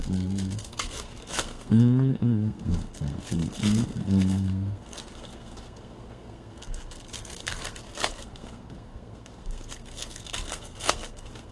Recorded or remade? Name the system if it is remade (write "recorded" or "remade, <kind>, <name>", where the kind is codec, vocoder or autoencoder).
remade, codec, SNAC